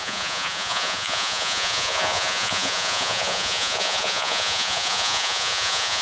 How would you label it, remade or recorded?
remade